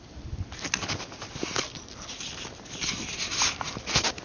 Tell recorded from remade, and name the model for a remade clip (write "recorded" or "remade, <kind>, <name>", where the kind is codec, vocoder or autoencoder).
recorded